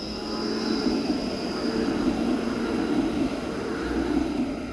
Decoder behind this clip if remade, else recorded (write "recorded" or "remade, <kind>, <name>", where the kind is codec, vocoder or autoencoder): recorded